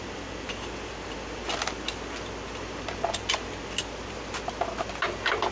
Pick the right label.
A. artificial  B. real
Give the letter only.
B